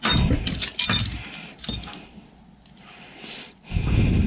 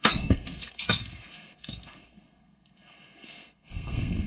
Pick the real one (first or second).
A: first